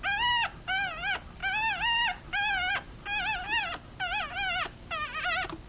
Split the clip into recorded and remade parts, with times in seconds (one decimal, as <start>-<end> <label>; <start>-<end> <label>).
0.0-5.7 recorded